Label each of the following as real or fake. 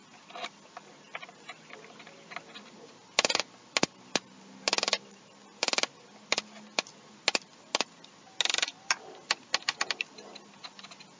real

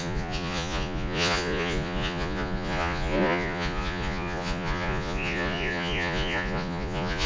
fake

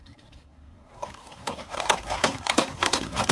fake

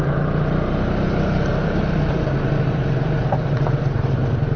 fake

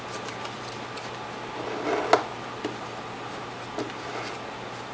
real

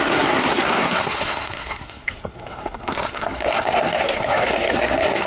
fake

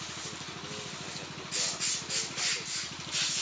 real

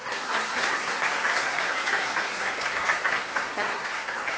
fake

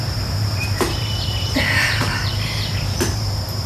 fake